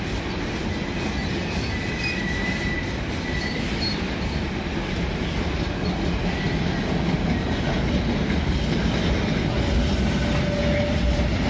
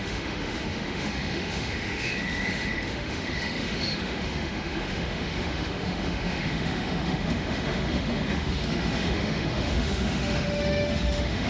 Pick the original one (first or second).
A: first